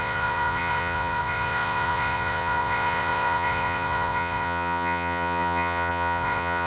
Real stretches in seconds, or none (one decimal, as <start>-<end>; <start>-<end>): none